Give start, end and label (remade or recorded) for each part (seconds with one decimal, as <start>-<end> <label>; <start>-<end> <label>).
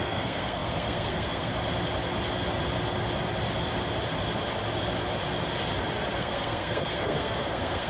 0.0-1.5 remade; 1.5-6.2 recorded; 6.2-7.9 remade